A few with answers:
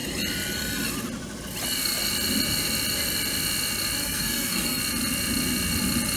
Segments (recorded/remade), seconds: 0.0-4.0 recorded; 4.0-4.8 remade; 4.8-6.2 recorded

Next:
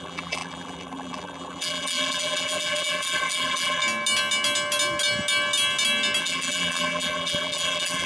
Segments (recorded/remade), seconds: 0.0-3.8 remade; 3.8-6.2 recorded; 6.2-8.1 remade

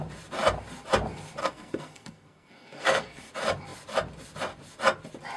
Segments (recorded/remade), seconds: 0.0-1.4 recorded; 1.4-3.3 remade; 3.3-5.4 recorded

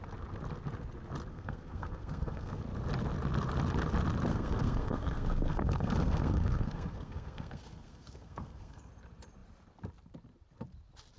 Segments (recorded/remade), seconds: 0.0-1.3 recorded; 1.3-2.6 remade; 2.6-4.3 recorded; 4.3-8.9 remade; 8.9-11.2 recorded

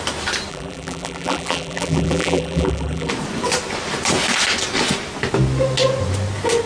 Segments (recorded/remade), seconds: 0.0-0.5 recorded; 0.5-3.1 remade; 3.1-6.7 recorded

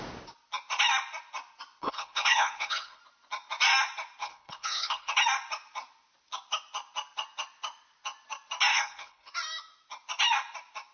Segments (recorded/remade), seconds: 0.0-1.8 recorded; 1.8-3.0 remade; 3.0-4.2 recorded; 4.2-5.1 remade; 5.1-8.7 recorded; 8.7-9.3 remade; 9.3-10.9 recorded

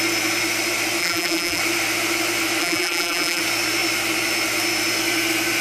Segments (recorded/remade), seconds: 0.0-1.0 recorded; 1.0-1.6 remade; 1.6-2.6 recorded; 2.6-3.4 remade; 3.4-5.6 recorded

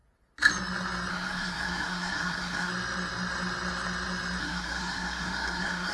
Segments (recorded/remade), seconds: 0.0-1.1 recorded; 1.1-2.7 remade; 2.7-4.4 recorded; 4.4-5.9 remade